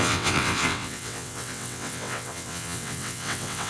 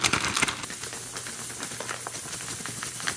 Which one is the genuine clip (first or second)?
second